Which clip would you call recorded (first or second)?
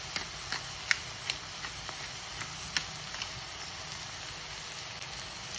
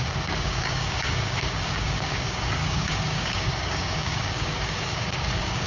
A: first